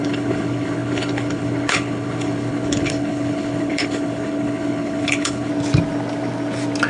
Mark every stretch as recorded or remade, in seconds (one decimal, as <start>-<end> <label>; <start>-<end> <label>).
0.0-5.5 remade; 5.5-6.9 recorded